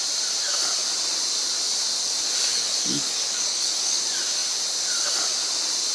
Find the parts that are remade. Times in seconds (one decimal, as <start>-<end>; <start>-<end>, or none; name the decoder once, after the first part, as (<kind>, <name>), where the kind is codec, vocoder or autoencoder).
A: 2.5-4.0 (codec, DAC)